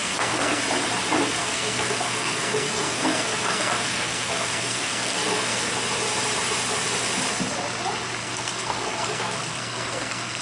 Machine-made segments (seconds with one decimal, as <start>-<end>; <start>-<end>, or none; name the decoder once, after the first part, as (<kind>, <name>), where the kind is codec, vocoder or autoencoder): 0.0-0.6 (codec, SNAC); 1.4-5.7; 8.2-10.4